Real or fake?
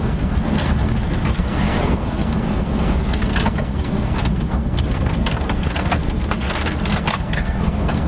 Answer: fake